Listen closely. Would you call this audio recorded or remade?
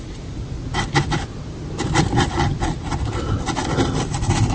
recorded